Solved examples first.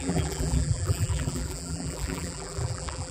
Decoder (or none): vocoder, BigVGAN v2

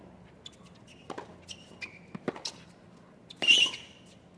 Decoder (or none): none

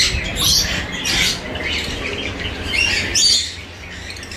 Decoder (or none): none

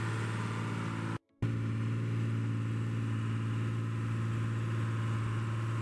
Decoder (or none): none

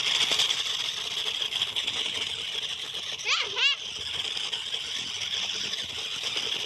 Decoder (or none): none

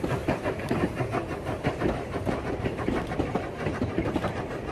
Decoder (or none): vocoder, BigVGAN v2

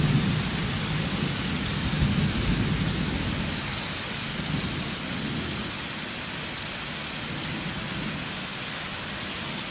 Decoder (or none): none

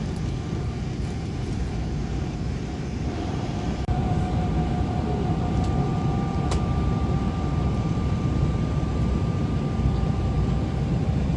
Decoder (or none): vocoder, BigVGAN v2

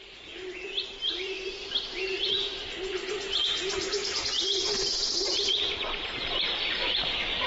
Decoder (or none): vocoder, BigVGAN v2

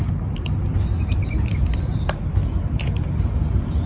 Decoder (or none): vocoder, BigVGAN v2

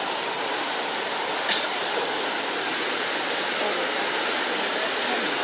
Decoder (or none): none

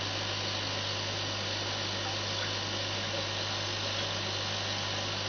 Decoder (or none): none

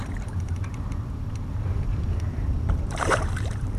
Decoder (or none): vocoder, BigVGAN v2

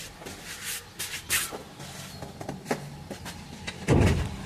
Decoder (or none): none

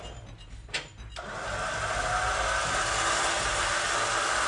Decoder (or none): none